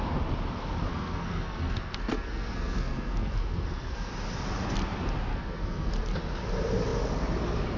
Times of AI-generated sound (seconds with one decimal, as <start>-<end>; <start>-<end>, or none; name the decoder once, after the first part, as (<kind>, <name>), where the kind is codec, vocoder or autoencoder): 0.9-4.1 (codec, SNAC); 5.3-5.9